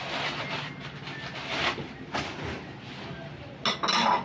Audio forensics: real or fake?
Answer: real